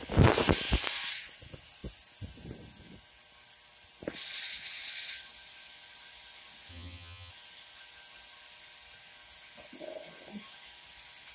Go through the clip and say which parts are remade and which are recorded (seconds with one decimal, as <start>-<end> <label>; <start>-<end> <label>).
0.0-6.7 recorded; 6.7-7.3 remade; 7.3-11.3 recorded